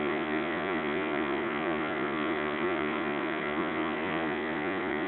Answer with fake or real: fake